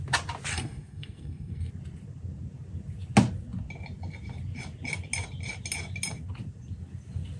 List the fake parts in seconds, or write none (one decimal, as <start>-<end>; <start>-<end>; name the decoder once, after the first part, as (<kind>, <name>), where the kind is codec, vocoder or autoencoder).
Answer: 0.5-1.7 (codec, SNAC)